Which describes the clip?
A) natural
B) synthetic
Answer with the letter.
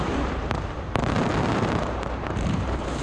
B